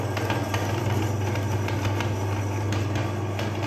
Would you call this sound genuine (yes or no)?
yes